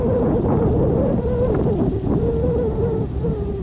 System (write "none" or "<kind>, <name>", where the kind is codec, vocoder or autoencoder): none